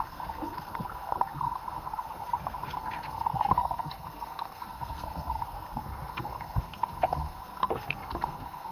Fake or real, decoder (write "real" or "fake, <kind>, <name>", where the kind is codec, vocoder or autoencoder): fake, codec, SNAC